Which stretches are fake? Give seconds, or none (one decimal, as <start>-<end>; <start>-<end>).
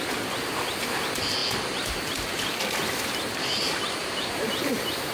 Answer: 4.0-5.1